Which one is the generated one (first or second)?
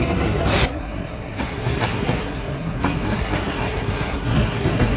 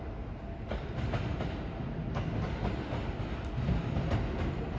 first